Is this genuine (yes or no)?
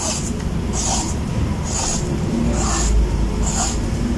yes